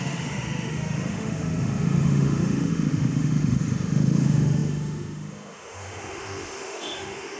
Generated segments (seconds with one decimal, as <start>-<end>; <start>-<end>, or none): 0.0-7.4